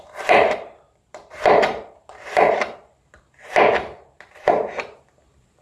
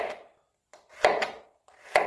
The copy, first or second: first